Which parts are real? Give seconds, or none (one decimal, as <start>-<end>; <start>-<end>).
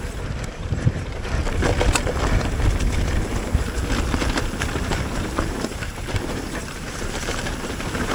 1.4-4.7